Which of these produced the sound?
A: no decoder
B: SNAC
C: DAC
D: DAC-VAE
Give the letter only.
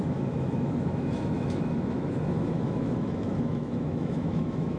D